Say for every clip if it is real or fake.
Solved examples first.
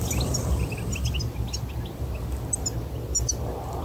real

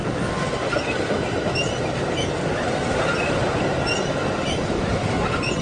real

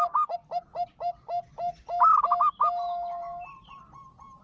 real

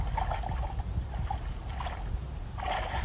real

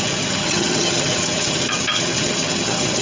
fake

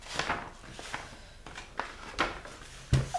real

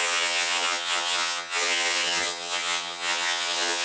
fake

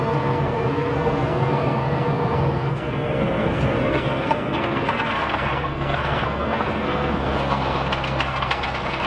fake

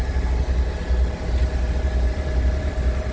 real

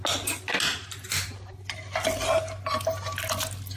real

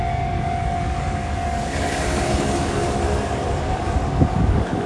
fake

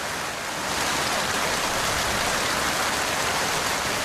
real